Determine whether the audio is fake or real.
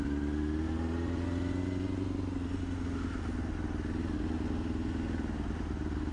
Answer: real